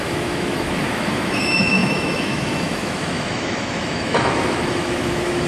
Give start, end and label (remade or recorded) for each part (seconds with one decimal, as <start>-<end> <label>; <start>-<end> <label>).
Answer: 0.0-5.5 remade